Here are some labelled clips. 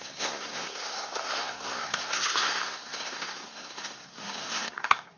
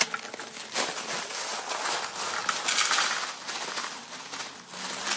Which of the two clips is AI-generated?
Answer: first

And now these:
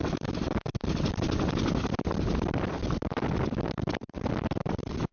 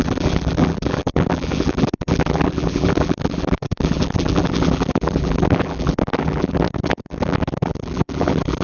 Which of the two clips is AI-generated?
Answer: second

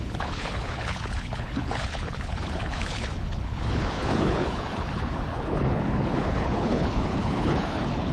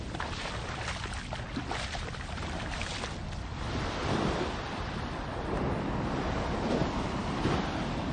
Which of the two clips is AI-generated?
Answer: first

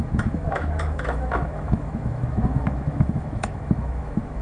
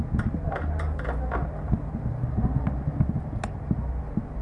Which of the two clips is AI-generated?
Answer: first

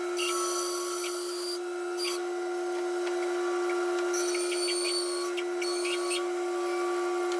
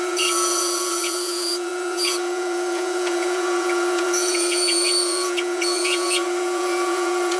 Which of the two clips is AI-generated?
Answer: second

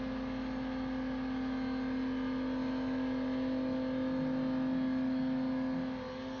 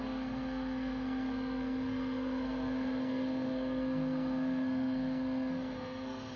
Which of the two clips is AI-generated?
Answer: second